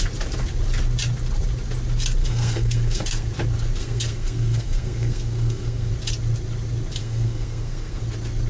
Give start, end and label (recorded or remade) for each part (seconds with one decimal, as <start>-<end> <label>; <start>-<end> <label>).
0.0-2.2 recorded; 2.2-3.3 remade; 3.3-3.8 recorded; 3.8-5.9 remade; 5.9-7.0 recorded; 7.0-8.0 remade; 8.0-8.5 recorded